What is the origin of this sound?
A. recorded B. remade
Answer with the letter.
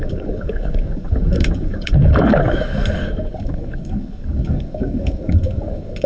B